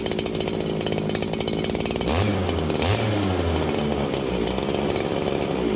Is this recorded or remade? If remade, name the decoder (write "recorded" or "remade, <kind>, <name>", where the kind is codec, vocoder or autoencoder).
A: recorded